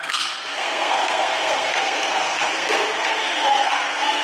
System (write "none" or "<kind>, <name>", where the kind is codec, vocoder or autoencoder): codec, SNAC